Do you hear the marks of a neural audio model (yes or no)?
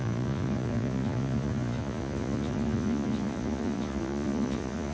yes